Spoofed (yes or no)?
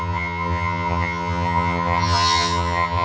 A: yes